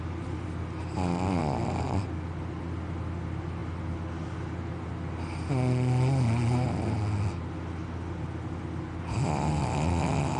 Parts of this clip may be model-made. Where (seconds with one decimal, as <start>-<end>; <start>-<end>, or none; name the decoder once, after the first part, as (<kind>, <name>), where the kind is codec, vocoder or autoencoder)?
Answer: none